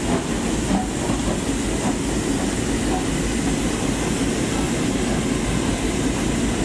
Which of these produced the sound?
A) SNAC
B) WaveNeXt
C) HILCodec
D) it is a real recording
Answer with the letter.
D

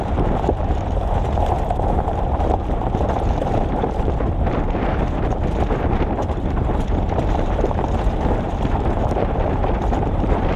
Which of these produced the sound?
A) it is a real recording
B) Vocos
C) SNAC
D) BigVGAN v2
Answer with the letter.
D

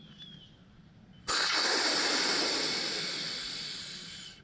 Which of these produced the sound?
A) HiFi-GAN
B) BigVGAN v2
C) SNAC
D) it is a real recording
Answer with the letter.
D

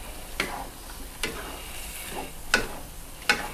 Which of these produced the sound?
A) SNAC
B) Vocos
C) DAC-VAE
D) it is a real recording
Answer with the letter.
D